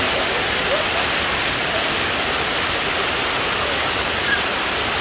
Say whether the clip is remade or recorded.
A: recorded